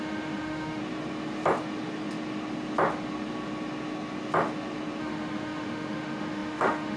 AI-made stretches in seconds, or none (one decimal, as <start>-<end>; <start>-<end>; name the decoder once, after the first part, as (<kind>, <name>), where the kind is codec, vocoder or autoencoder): 0.0-0.8 (autoencoder, DAC-VAE); 5.0-7.0